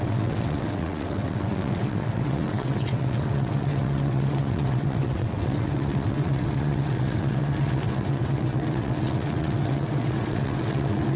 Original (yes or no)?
no